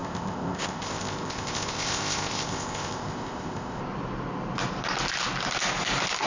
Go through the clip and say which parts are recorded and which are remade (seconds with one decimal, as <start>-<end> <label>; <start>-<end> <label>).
0.0-3.8 remade; 3.8-6.3 recorded